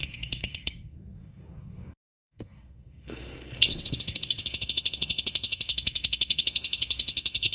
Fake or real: fake